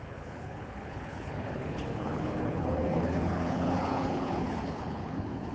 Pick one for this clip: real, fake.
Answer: fake